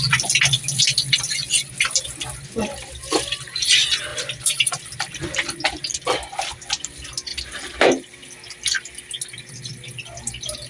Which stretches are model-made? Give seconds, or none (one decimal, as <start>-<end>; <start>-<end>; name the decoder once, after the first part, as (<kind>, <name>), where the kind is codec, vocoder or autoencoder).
4.1-5.2 (vocoder, BigVGAN v2); 5.9-6.5; 7.3-9.0